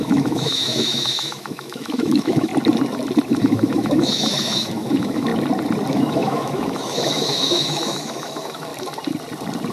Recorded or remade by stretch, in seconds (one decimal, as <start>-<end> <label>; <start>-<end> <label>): 0.0-2.5 remade; 2.5-3.4 recorded; 3.4-5.3 remade; 5.3-5.9 recorded; 5.9-8.7 remade; 8.7-9.7 recorded